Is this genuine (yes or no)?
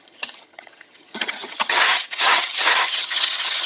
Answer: no